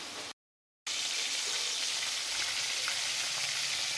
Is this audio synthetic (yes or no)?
no